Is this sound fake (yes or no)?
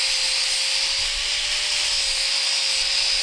no